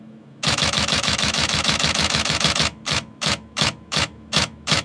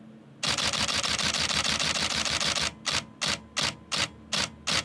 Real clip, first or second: second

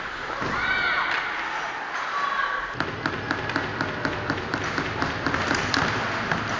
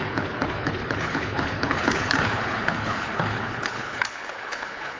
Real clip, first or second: first